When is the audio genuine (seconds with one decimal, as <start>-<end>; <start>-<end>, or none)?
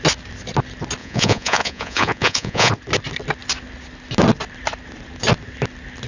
0.0-1.0; 2.7-6.1